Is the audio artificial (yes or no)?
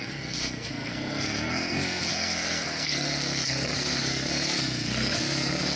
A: yes